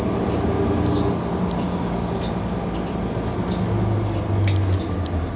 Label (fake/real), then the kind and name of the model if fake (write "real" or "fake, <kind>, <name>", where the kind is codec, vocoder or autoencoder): real